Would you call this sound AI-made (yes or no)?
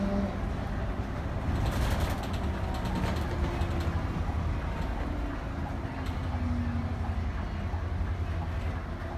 no